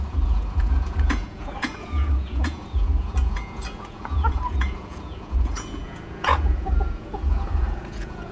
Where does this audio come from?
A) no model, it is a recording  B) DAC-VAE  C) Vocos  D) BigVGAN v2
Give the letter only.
C